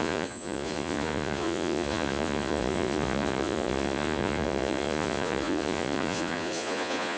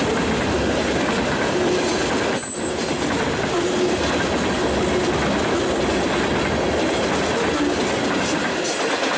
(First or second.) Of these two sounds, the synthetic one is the first